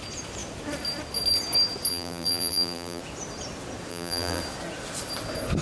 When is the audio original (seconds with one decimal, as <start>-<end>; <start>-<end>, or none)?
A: 0.0-1.9; 3.0-3.9; 4.4-5.6